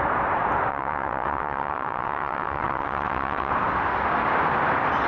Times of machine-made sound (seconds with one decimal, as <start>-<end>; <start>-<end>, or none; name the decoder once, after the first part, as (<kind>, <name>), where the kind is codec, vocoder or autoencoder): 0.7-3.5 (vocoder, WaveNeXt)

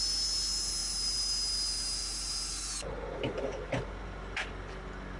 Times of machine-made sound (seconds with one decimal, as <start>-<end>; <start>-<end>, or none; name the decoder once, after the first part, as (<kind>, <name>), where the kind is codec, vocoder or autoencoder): none

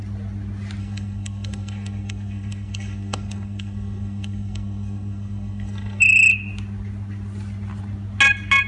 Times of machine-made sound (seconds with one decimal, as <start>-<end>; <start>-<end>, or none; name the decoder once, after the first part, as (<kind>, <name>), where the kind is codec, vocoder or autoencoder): 0.8-6.0 (codec, SNAC)